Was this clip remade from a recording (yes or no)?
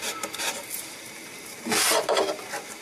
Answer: no